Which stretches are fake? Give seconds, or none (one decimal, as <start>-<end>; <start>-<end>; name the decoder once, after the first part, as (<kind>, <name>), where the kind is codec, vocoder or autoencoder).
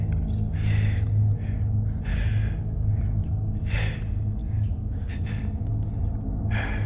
2.1-3.0 (codec, DAC); 4.4-5.2